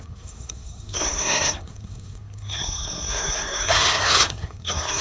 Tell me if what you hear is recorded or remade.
remade